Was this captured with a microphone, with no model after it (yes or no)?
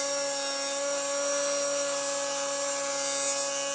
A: yes